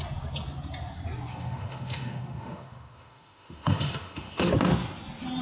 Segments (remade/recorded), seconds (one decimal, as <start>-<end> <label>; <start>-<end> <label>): 0.0-1.3 recorded; 1.3-4.5 remade; 4.5-5.4 recorded